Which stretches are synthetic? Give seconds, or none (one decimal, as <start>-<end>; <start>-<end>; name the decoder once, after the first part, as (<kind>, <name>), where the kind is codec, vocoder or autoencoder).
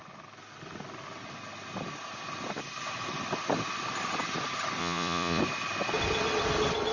4.8-5.4 (vocoder, Vocos)